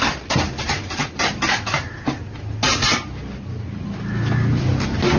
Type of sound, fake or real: real